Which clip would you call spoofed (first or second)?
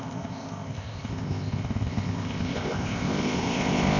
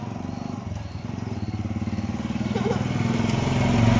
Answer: first